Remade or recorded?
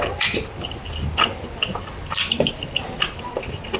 recorded